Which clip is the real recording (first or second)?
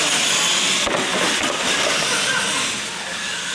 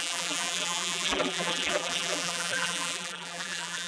first